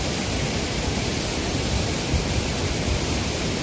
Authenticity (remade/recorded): remade